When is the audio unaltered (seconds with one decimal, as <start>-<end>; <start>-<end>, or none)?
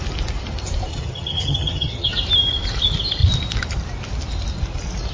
0.0-0.9; 2.1-5.1